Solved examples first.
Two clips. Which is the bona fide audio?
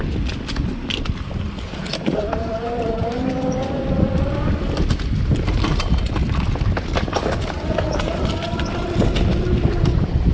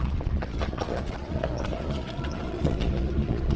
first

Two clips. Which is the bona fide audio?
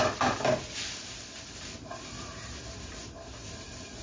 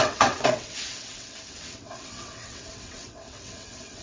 first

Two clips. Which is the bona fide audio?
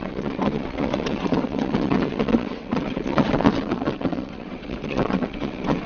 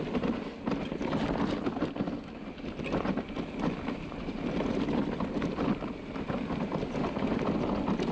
second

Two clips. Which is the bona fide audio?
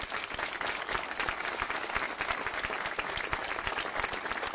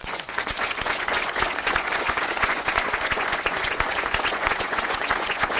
first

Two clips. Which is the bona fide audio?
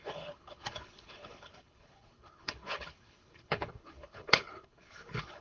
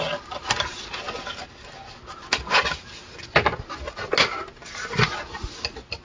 second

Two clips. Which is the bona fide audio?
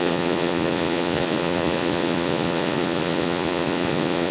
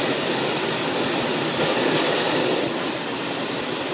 second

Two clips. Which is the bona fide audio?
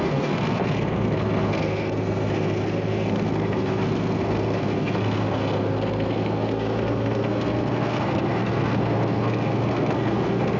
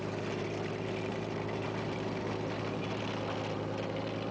second